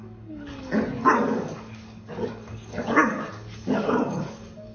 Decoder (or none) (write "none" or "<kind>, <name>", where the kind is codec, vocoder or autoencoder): codec, DAC